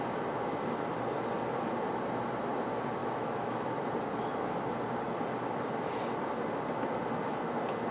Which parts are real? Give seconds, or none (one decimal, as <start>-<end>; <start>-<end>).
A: 0.0-3.0; 3.8-7.9